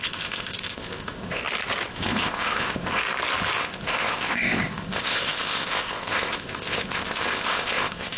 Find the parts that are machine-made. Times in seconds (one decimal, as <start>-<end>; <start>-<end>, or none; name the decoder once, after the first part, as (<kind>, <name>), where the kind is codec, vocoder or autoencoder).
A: 0.0-1.4 (codec, ZipCodec); 1.9-3.0; 3.6-8.2

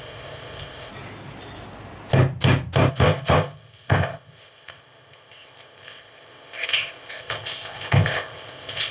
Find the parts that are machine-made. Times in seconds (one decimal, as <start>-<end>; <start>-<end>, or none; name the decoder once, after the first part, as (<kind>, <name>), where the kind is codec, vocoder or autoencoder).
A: 0.0-0.9 (codec, ZipCodec); 2.9-8.9

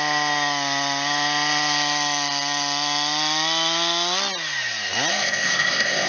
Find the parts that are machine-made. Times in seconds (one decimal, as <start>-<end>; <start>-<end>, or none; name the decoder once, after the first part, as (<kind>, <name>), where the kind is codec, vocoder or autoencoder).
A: 5.1-6.1 (codec, ZipCodec)

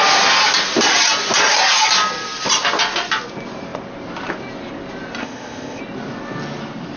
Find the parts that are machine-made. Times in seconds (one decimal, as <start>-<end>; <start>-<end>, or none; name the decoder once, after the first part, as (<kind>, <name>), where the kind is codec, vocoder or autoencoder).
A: 5.2-5.8 (codec, ZipCodec)

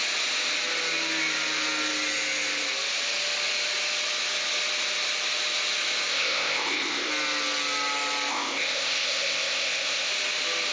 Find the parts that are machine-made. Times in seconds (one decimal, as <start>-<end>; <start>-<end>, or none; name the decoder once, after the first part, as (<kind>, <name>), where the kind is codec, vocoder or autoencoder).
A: 6.1-7.1 (codec, ZipCodec); 8.3-10.1

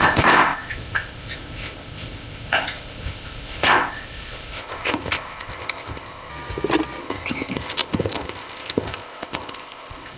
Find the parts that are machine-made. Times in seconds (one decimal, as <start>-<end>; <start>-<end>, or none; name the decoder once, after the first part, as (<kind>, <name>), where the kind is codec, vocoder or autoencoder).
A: 0.0-6.3 (codec, ZipCodec); 7.0-10.2